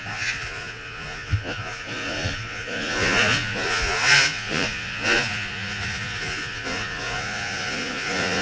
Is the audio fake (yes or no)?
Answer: yes